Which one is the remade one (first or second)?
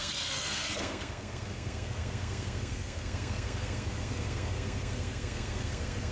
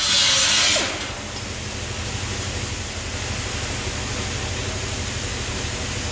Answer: first